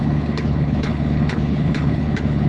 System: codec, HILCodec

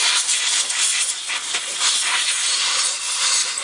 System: none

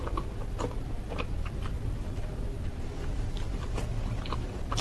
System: none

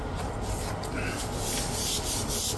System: none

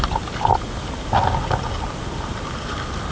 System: none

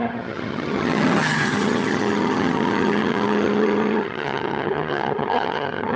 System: vocoder, HiFi-GAN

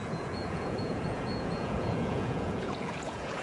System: vocoder, Vocos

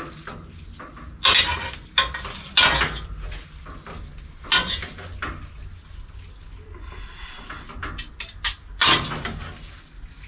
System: none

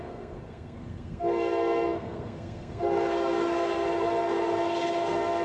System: codec, SNAC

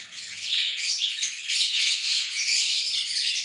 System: codec, HILCodec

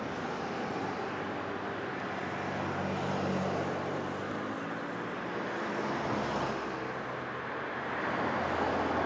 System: none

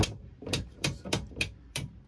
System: vocoder, BigVGAN v2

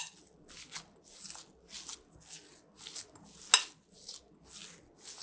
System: none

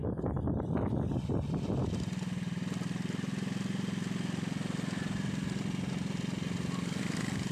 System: none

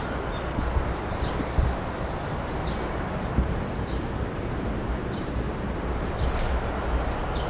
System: none